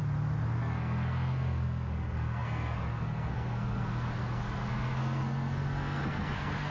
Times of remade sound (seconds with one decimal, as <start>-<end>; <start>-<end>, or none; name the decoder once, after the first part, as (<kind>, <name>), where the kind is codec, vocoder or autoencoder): 0.6-6.7 (codec, SNAC)